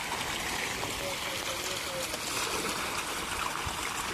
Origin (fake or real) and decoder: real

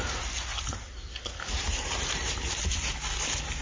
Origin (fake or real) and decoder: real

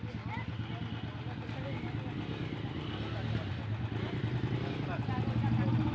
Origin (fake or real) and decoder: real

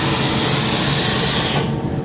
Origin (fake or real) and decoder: real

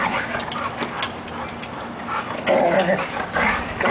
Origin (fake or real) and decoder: real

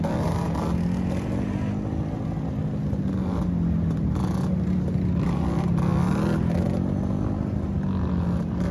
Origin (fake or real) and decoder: real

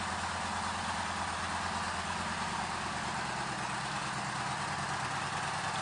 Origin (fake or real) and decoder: real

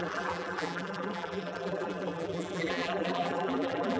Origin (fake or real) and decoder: fake, vocoder, BigVGAN v2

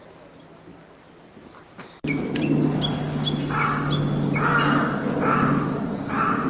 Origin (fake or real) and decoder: real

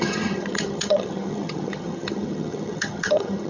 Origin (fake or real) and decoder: fake, vocoder, HiFi-GAN